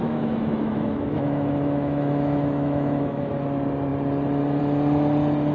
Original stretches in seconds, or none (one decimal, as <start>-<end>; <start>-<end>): 3.3-5.5